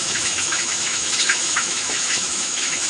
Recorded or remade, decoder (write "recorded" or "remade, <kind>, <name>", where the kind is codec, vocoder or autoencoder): remade, autoencoder, DAC-VAE